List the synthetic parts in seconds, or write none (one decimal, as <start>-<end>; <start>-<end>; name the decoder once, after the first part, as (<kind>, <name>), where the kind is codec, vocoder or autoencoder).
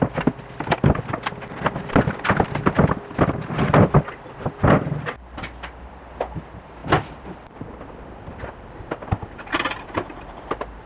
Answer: 6.8-9.8 (vocoder, BigVGAN v2)